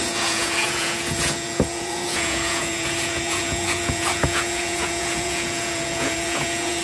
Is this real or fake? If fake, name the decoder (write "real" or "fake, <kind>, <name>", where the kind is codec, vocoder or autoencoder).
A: fake, vocoder, Vocos